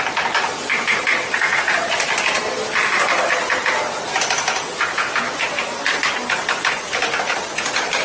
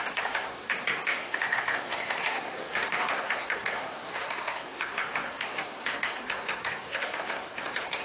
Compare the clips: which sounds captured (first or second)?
first